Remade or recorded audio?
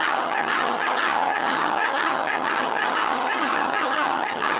remade